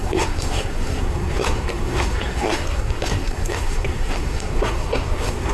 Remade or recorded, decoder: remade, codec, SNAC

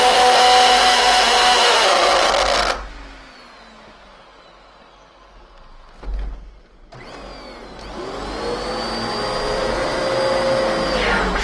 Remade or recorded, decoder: recorded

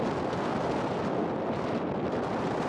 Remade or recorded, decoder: recorded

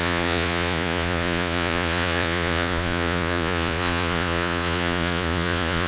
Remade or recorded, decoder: remade, vocoder, Vocos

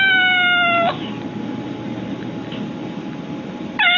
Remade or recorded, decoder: recorded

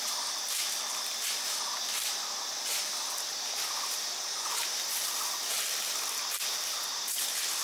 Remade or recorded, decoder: recorded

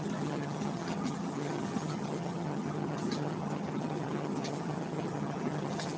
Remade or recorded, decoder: remade, vocoder, HiFi-GAN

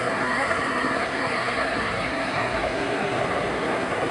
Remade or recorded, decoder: remade, codec, SNAC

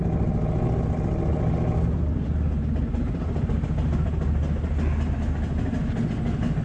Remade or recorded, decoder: recorded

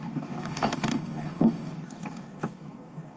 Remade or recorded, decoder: remade, codec, DAC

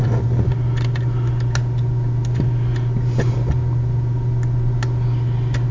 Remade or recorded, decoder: recorded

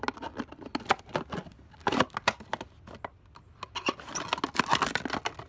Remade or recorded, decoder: recorded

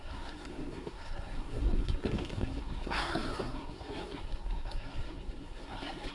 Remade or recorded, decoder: remade, codec, SNAC